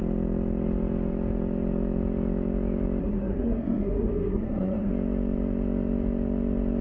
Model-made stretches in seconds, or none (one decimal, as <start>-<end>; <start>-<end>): 3.0-4.9